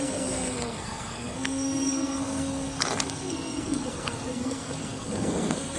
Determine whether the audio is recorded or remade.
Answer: remade